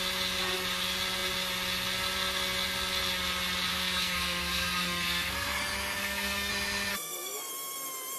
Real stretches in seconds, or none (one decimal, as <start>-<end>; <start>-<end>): 0.0-3.7; 5.6-6.0; 6.5-6.9; 7.5-8.2